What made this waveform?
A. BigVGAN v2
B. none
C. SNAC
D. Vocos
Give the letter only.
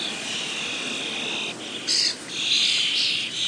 B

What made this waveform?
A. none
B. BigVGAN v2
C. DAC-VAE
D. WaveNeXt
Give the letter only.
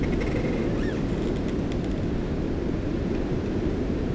A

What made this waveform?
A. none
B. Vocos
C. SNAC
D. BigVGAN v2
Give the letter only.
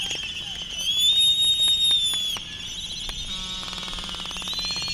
A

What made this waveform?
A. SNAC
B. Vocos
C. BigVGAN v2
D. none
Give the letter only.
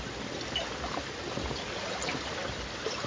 D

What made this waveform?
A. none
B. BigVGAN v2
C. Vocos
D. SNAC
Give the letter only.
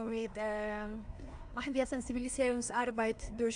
D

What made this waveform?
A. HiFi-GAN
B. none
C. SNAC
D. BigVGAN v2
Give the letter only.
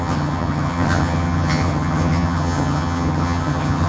A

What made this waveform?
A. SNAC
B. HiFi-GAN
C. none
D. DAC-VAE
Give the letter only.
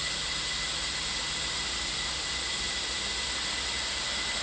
C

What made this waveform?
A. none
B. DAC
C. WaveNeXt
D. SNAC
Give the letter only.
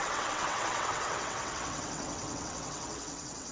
C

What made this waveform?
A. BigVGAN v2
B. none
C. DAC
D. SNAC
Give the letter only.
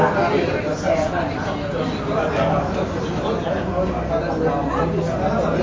B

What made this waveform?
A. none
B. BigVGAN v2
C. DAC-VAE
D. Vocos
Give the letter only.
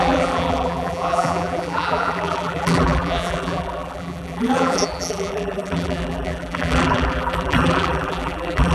B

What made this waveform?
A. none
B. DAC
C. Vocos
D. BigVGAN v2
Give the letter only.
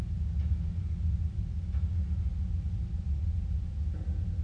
A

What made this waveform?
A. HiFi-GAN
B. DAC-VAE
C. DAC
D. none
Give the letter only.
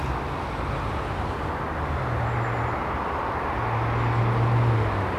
D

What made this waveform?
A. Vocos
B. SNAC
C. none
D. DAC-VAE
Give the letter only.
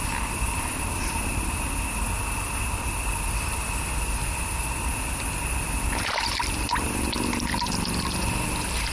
C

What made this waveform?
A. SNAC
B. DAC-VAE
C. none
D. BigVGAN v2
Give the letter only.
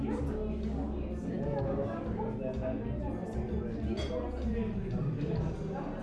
C